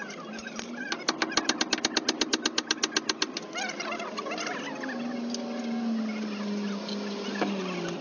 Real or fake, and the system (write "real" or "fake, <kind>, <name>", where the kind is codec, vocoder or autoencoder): real